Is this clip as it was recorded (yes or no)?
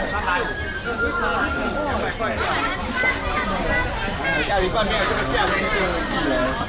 yes